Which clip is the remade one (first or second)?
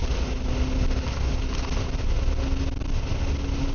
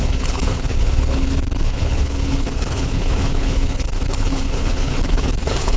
second